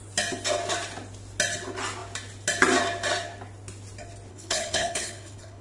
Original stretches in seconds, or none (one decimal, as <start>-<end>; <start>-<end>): 0.0-4.3